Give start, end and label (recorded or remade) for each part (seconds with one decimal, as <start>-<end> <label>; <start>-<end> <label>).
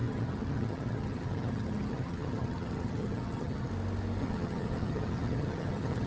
0.0-3.7 remade; 3.7-4.2 recorded; 4.2-6.1 remade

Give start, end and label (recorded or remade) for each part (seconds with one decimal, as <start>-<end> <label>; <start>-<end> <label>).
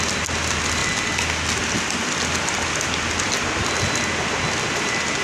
0.0-5.2 recorded